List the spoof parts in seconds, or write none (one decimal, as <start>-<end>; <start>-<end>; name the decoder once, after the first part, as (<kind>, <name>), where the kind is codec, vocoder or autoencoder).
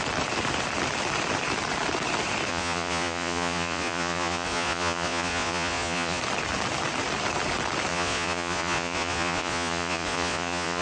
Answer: 2.5-6.2 (vocoder, Vocos); 7.9-10.8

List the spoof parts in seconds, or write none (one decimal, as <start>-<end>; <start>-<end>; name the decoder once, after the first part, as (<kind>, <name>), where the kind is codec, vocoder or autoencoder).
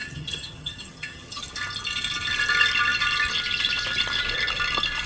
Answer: 0.0-1.4 (vocoder, HiFi-GAN)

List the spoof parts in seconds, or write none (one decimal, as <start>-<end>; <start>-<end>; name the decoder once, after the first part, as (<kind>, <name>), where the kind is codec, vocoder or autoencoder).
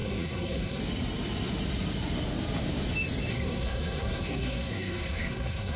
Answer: 0.0-0.8 (codec, SNAC); 3.3-5.8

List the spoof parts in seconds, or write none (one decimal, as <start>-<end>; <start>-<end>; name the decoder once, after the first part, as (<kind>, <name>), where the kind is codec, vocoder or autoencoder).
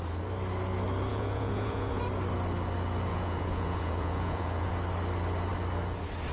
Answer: 1.1-2.0 (vocoder, Vocos); 3.1-4.7